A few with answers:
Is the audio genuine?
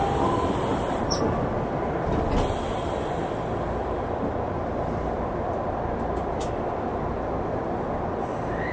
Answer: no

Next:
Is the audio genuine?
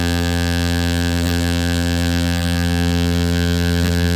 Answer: no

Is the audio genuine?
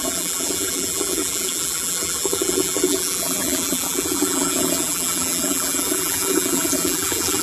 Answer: no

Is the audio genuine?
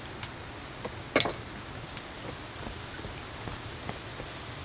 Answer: yes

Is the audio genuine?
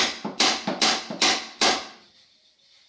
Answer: yes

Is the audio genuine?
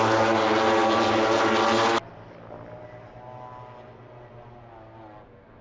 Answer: yes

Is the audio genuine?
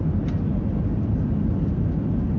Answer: yes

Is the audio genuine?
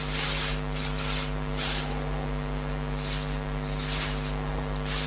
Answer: yes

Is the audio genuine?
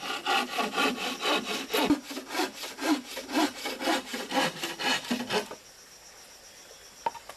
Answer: yes